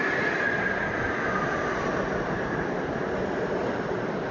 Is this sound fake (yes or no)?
no